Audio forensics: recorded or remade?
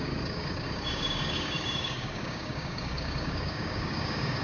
remade